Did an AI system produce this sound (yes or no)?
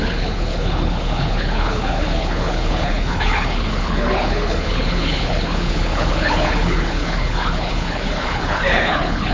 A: yes